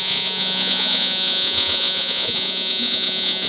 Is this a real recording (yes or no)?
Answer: no